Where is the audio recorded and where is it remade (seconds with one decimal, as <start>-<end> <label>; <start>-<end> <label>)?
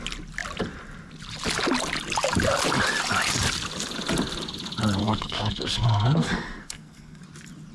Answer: 0.0-5.0 recorded; 5.0-7.2 remade; 7.2-7.7 recorded